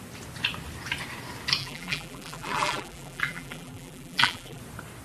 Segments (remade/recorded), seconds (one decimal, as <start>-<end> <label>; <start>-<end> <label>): 0.0-1.6 recorded; 1.6-4.6 remade; 4.6-5.0 recorded